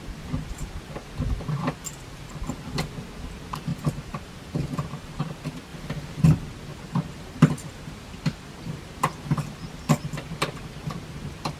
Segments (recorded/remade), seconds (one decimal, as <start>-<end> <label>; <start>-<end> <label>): 0.0-3.7 recorded; 3.7-5.3 remade; 5.3-6.7 recorded; 6.7-9.0 remade; 9.0-11.6 recorded